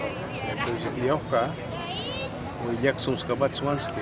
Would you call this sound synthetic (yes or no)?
no